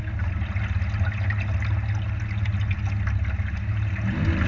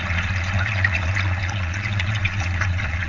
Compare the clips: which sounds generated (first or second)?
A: second